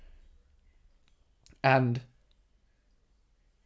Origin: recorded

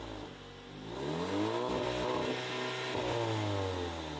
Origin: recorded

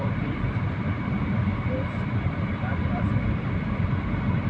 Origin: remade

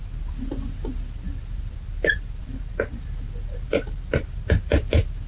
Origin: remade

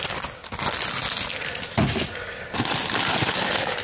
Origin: recorded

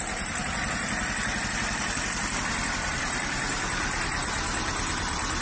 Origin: remade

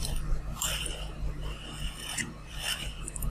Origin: remade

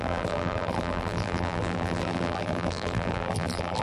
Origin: remade